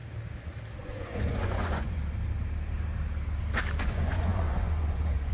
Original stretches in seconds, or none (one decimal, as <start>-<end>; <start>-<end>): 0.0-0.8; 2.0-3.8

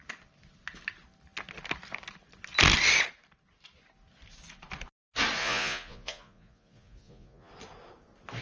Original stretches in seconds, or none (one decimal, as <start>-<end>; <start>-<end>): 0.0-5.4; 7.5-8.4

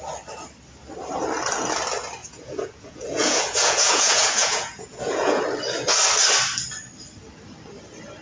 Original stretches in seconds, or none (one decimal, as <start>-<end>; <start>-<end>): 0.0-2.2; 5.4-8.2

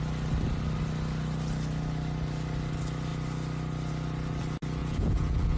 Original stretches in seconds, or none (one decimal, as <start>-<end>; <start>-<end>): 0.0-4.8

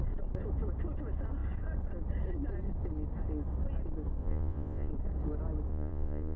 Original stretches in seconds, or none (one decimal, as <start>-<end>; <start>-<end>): 0.0-4.2; 4.9-5.7